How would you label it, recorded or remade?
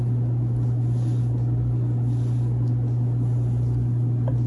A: recorded